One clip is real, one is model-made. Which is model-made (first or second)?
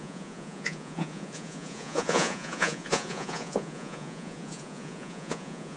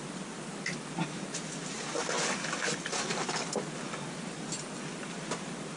first